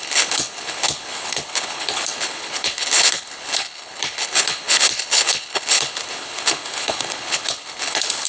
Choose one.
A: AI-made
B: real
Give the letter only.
A